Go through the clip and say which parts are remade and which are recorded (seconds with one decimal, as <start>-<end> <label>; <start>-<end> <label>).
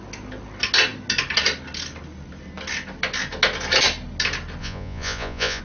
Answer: 0.0-4.6 recorded; 4.6-5.6 remade